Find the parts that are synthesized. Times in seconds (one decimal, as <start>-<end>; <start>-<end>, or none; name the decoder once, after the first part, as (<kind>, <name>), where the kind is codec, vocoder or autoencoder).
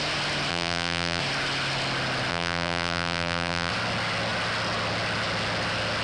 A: 0.5-1.2 (vocoder, BigVGAN v2); 2.3-3.7